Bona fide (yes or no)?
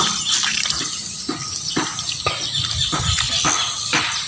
yes